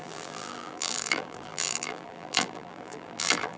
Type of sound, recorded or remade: remade